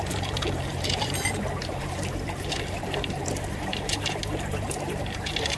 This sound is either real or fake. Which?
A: fake